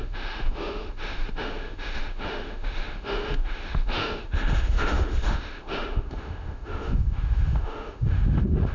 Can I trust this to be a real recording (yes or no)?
no